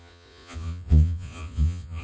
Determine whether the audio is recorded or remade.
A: remade